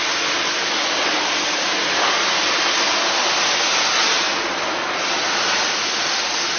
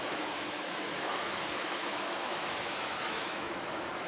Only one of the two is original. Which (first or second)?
first